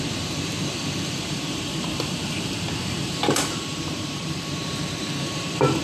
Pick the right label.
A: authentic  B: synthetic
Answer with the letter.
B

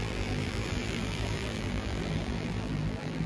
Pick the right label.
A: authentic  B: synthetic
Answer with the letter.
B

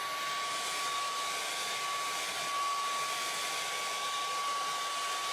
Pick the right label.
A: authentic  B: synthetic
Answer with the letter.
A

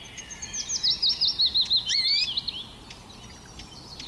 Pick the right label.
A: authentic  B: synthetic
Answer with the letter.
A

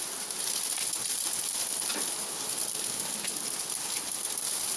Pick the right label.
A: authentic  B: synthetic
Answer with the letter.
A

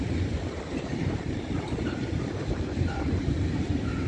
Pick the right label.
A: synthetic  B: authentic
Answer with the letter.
A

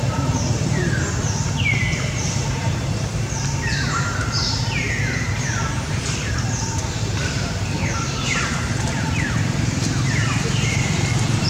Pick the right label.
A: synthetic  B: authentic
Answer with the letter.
A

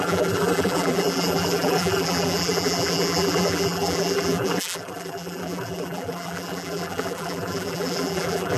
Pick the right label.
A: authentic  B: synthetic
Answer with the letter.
B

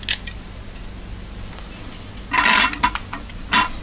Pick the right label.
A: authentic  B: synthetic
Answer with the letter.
A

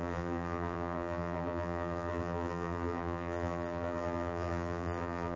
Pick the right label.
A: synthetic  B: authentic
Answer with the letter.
A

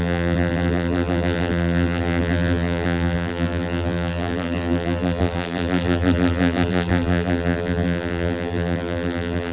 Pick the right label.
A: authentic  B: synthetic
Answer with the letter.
B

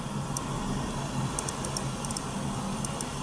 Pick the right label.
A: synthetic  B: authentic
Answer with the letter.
B